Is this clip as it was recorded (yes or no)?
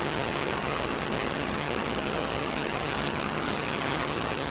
no